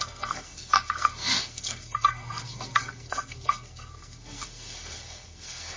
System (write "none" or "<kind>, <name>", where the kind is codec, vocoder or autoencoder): codec, SNAC